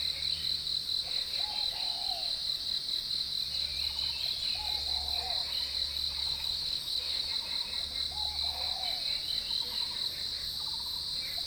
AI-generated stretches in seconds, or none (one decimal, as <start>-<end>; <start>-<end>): 6.2-7.3